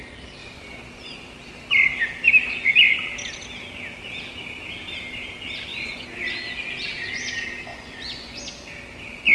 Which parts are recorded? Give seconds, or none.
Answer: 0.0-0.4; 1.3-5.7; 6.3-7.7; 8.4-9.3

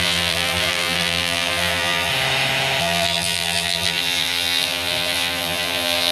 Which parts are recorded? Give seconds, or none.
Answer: 2.1-2.8

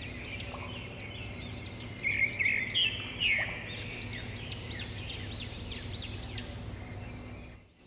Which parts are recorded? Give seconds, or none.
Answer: 0.0-7.9

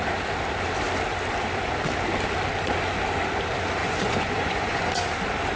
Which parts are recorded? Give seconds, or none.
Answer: 0.0-3.8; 4.9-5.6

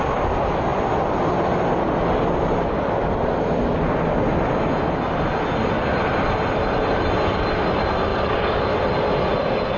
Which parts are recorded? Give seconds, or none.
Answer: 0.0-8.1; 8.8-9.8